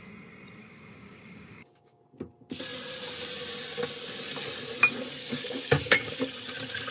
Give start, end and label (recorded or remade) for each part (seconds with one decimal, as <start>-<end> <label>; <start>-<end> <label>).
0.0-0.6 recorded; 0.6-2.0 remade; 2.0-5.2 recorded; 5.2-6.2 remade; 6.2-6.9 recorded

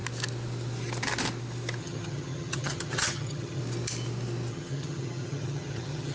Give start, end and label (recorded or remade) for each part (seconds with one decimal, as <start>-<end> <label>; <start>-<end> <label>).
0.0-1.8 recorded; 1.8-3.6 remade; 3.6-4.5 recorded; 4.5-6.1 remade

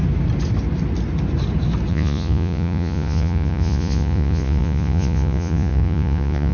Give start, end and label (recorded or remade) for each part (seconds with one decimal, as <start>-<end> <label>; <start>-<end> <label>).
0.0-1.9 recorded; 1.9-6.5 remade

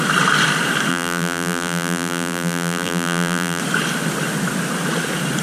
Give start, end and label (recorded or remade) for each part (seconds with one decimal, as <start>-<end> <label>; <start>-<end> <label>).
0.0-0.9 recorded; 0.9-3.6 remade; 3.6-5.4 recorded

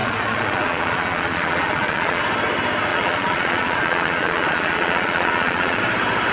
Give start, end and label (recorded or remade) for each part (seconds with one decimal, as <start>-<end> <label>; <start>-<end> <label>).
0.0-2.2 remade; 2.2-2.9 recorded; 2.9-5.8 remade; 5.8-6.3 recorded